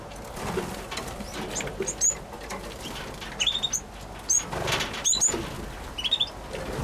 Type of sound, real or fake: real